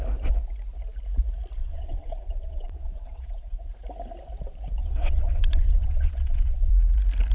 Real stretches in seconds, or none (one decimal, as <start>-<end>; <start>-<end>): 0.0-1.6; 3.7-4.8; 6.7-7.3